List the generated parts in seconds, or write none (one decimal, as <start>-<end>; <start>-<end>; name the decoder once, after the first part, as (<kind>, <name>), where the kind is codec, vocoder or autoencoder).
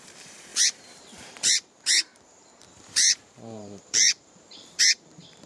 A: 0.0-5.5 (vocoder, BigVGAN v2)